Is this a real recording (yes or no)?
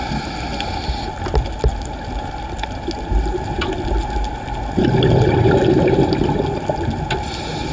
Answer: yes